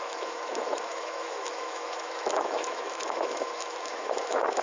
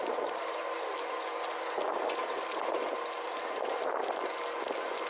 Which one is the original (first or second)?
second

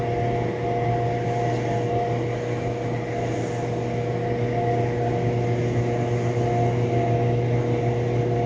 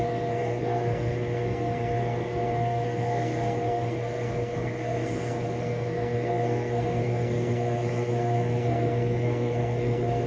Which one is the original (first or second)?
first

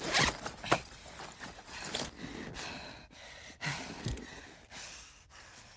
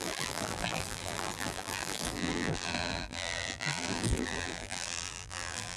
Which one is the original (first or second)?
first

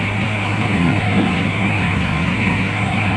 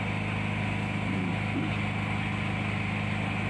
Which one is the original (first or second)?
second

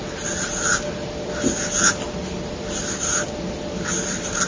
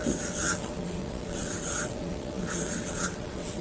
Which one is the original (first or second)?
first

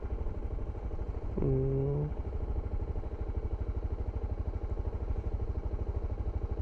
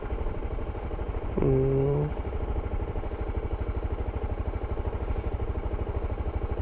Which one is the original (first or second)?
first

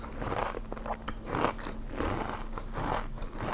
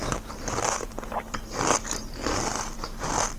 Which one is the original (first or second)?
first